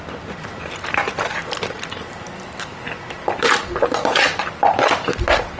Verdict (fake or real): real